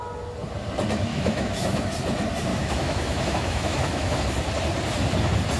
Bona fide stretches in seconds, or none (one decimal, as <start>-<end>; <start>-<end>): 0.0-1.1; 1.8-2.5; 4.2-5.6